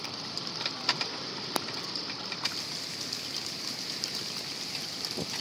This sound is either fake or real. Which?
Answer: real